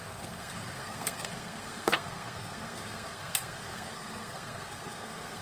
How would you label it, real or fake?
fake